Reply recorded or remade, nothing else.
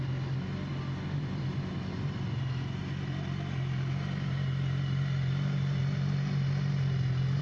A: recorded